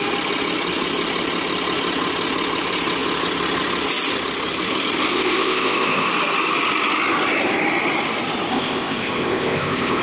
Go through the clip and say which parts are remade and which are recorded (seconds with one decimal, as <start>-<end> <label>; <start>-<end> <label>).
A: 0.0-5.1 recorded; 5.1-6.1 remade; 6.1-8.5 recorded; 8.5-10.0 remade